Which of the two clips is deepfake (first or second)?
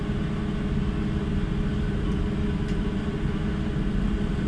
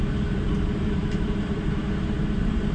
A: second